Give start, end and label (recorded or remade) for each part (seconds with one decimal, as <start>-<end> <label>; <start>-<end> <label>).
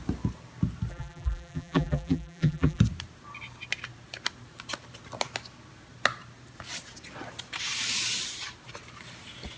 0.0-0.9 recorded; 0.9-2.8 remade; 2.8-9.6 recorded